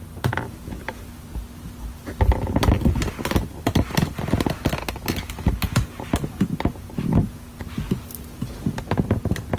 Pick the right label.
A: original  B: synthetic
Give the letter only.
A